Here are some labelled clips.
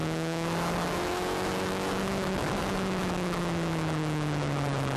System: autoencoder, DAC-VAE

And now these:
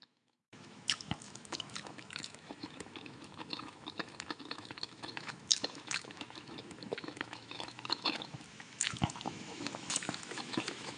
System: autoencoder, DAC-VAE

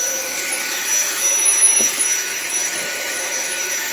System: autoencoder, DAC-VAE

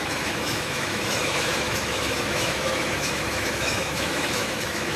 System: autoencoder, DAC-VAE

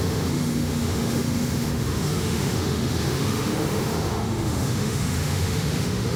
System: autoencoder, DAC-VAE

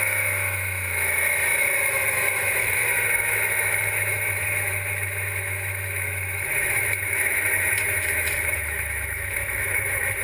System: autoencoder, DAC-VAE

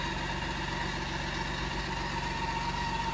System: none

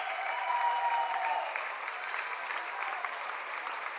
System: none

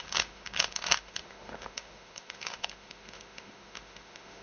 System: autoencoder, DAC-VAE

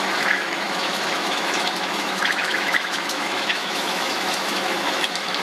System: autoencoder, DAC-VAE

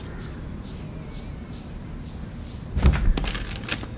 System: none